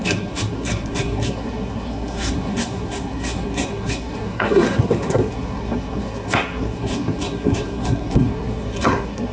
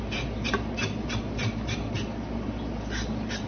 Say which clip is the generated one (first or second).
first